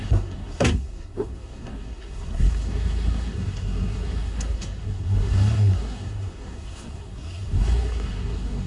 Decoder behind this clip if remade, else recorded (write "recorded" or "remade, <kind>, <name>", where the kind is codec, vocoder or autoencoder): remade, codec, SNAC